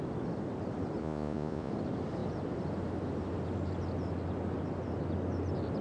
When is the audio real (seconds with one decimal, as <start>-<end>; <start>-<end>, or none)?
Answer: 0.0-1.0; 1.7-5.8

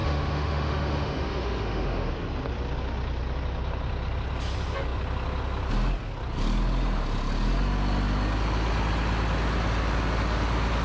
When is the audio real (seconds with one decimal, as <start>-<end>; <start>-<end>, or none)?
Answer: 2.1-10.8

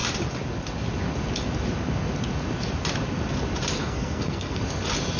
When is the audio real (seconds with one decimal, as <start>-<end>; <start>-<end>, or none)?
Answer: 0.0-3.8; 4.6-5.2

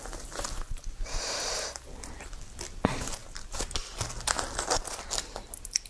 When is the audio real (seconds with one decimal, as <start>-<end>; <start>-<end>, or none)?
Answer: 0.0-5.9